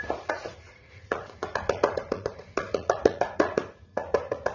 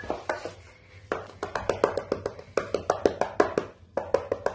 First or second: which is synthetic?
first